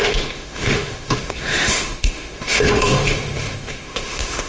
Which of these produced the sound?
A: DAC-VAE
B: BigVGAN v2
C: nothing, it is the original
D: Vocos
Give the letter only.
A